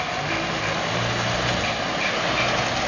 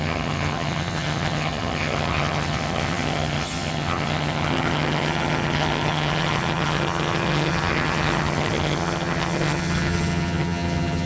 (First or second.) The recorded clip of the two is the first